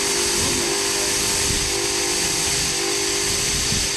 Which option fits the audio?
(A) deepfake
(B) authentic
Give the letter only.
B